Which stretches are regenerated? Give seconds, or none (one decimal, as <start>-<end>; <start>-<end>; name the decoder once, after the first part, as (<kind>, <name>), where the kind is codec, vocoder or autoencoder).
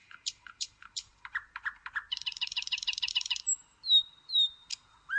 0.0-3.5 (vocoder, BigVGAN v2); 4.2-5.2